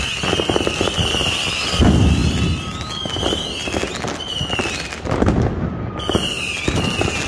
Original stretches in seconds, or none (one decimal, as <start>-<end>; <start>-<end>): 0.0-7.3